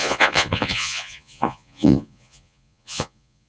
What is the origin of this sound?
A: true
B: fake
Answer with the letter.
B